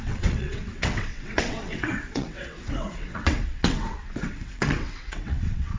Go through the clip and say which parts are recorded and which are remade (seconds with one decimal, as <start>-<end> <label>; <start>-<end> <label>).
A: 0.0-5.8 remade